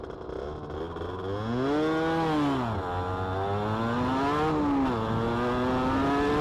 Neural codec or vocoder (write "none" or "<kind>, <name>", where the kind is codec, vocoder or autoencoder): none